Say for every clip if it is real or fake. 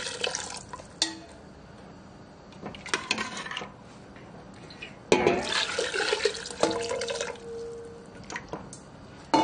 real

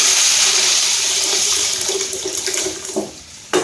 fake